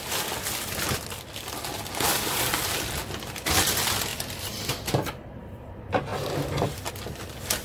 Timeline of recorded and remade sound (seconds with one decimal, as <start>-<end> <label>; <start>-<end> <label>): 0.0-4.1 recorded; 4.1-4.6 remade; 4.6-7.6 recorded